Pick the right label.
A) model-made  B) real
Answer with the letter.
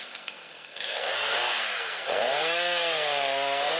A